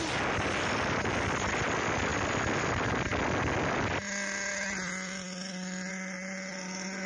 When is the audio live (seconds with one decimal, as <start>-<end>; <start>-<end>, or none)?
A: 0.0-7.1